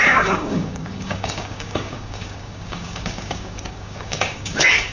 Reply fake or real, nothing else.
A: fake